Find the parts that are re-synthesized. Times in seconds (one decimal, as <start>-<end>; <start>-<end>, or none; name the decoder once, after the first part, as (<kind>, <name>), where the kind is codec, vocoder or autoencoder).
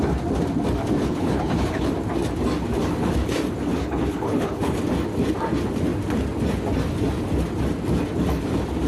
1.0-1.9 (codec, HILCodec); 3.8-4.8